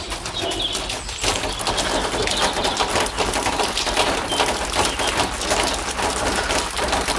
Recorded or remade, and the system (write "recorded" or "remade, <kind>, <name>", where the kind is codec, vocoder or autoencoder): recorded